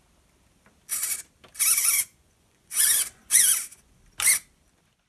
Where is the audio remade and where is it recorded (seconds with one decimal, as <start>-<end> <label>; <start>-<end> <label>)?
0.0-1.8 recorded; 1.8-4.0 remade; 4.0-5.1 recorded